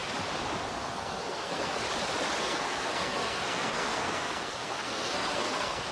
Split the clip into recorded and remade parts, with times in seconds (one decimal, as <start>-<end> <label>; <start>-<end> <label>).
0.0-0.7 recorded; 0.7-1.8 remade; 1.8-2.4 recorded; 2.4-5.9 remade